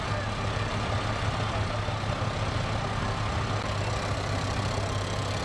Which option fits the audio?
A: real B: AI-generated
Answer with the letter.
A